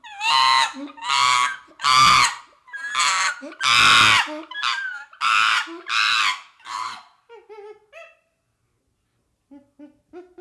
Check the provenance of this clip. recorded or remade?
recorded